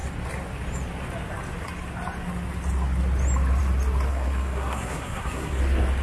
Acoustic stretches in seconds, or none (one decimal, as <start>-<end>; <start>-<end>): 0.0-4.1; 5.6-6.0